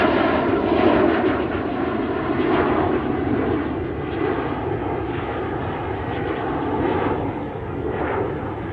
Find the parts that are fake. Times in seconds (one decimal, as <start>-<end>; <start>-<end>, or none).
4.8-5.4; 7.3-8.0